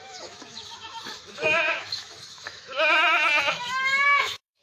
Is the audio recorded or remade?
remade